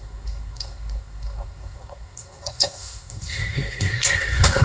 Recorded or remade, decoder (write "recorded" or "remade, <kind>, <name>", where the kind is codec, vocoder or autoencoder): remade, codec, SNAC